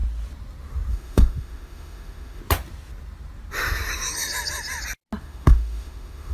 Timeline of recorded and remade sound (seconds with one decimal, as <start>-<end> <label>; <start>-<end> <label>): 0.0-0.9 recorded; 0.9-2.4 remade; 2.4-5.2 recorded; 5.2-6.3 remade